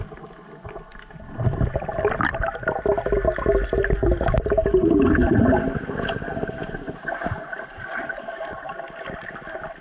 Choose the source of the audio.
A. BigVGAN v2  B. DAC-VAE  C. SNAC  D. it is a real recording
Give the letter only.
D